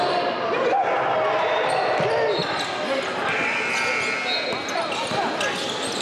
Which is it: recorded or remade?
recorded